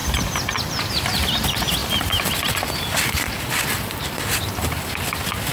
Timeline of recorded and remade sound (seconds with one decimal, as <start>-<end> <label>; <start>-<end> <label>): 0.0-1.8 recorded; 1.8-5.1 remade; 5.1-5.5 recorded

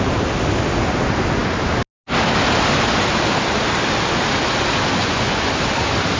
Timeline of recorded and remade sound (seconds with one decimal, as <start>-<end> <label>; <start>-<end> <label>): 0.0-5.0 recorded; 5.0-5.5 remade; 5.5-6.2 recorded

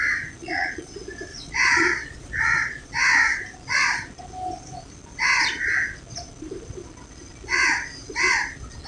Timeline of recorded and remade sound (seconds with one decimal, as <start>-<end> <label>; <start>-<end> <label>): 0.0-0.4 recorded; 0.4-0.9 remade; 0.9-1.3 recorded; 1.3-2.9 remade; 2.9-8.9 recorded